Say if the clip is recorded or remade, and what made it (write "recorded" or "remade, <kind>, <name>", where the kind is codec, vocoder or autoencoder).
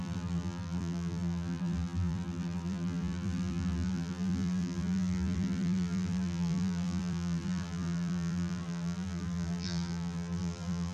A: remade, vocoder, BigVGAN v2